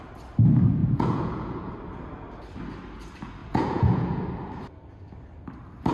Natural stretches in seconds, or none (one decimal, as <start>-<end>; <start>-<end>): 0.0-0.8; 1.7-3.4; 4.2-5.9